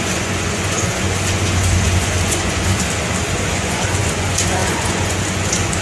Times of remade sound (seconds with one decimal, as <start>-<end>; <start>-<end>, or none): 0.0-2.7; 3.3-5.8